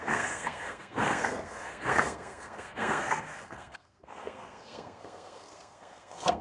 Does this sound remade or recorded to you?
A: remade